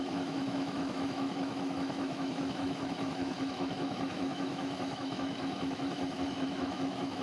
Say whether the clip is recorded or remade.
remade